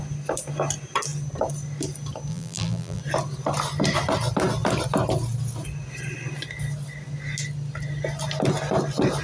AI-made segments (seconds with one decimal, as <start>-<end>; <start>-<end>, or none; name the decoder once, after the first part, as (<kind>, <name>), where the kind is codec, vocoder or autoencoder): 2.3-3.0 (vocoder, BigVGAN v2)